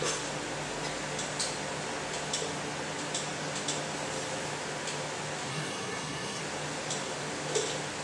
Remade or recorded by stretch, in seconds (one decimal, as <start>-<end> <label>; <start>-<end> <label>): 0.0-5.5 recorded; 5.5-6.4 remade; 6.4-8.0 recorded